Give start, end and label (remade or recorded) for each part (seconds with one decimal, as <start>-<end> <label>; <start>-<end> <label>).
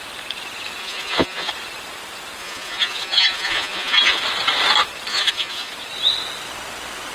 0.0-0.8 recorded; 0.8-1.5 remade; 1.5-2.4 recorded; 2.4-4.2 remade; 4.2-5.1 recorded; 5.1-5.7 remade; 5.7-7.1 recorded